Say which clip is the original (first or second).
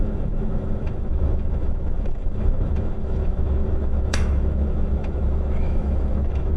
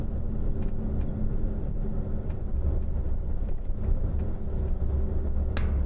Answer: second